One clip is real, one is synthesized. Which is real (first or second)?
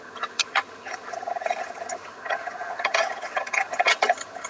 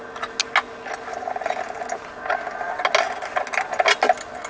second